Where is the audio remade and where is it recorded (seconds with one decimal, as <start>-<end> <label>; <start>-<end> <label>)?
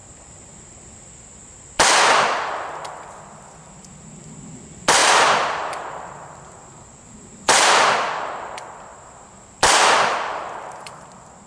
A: 0.0-5.0 recorded; 5.0-7.0 remade; 7.0-11.5 recorded